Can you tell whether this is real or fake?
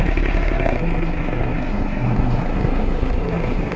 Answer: fake